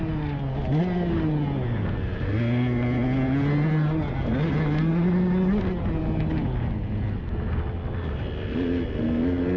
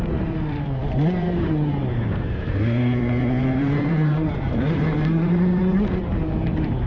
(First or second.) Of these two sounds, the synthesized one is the second